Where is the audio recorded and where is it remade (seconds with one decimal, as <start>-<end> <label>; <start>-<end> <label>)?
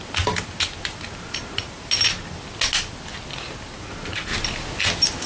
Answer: 0.0-5.3 recorded